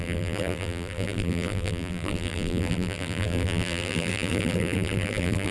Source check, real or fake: fake